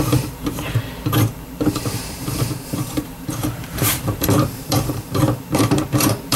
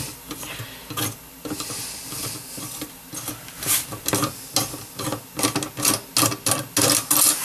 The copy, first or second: first